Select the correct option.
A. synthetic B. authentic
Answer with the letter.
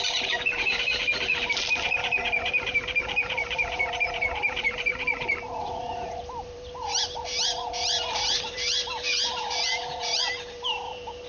A